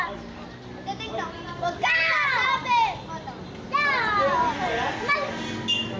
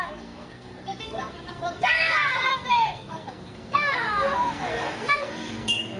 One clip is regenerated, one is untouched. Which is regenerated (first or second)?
second